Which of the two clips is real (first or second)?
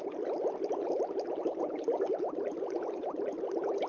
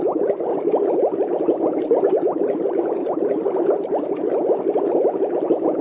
second